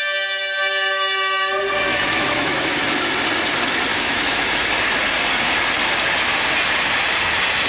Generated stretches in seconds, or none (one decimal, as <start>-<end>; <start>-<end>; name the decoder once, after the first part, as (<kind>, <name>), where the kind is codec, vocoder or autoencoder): 1.9-3.1 (autoencoder, DAC-VAE); 3.9-4.7